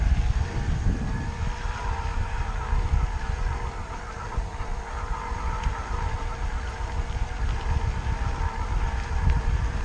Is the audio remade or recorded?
recorded